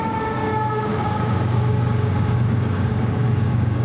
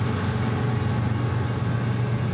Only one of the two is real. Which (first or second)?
second